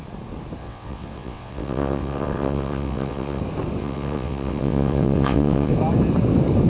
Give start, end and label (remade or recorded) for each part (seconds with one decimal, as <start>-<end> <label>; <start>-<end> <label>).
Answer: 0.0-0.6 recorded; 0.6-3.4 remade; 3.4-3.8 recorded; 3.8-5.7 remade; 5.7-6.7 recorded